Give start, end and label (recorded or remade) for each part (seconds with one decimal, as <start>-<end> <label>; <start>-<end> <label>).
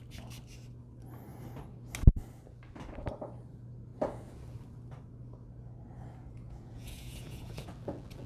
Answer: 0.0-6.2 recorded; 6.2-7.7 remade; 7.7-8.3 recorded